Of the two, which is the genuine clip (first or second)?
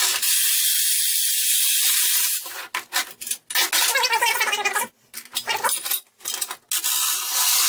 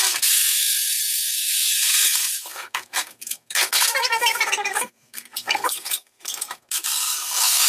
first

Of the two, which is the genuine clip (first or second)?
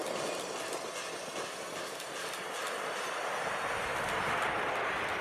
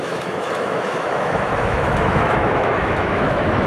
first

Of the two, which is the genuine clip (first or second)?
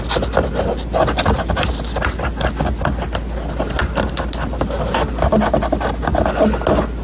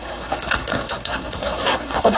first